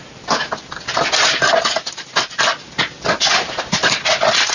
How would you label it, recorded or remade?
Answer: recorded